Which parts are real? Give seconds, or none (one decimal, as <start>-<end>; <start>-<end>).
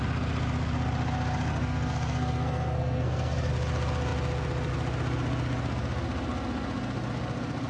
0.0-1.5; 3.5-7.7